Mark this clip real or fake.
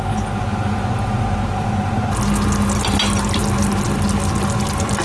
real